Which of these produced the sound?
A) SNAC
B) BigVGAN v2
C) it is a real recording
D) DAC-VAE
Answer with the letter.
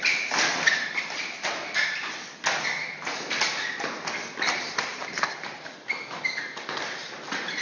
C